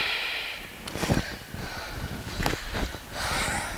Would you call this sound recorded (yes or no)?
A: yes